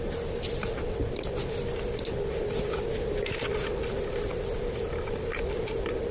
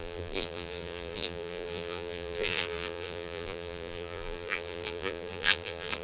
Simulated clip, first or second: second